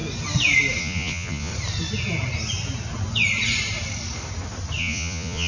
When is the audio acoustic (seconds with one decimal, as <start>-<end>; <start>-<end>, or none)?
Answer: 0.0-0.8; 1.5-4.8